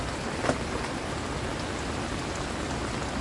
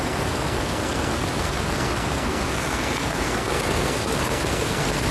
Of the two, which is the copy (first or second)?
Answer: second